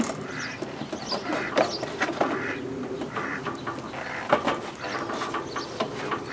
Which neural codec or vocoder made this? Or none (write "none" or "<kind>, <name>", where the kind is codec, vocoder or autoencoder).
none